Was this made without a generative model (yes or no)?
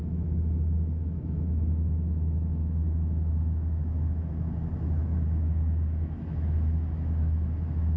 no